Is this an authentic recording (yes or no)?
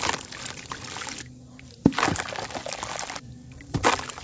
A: yes